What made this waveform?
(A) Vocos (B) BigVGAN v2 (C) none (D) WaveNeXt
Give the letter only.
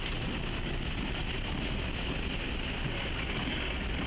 C